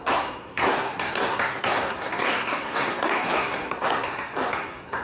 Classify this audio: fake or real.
fake